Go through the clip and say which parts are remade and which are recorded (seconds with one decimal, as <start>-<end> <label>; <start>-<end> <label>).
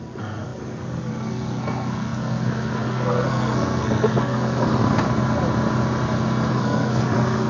0.0-4.8 remade; 4.8-6.5 recorded; 6.5-7.5 remade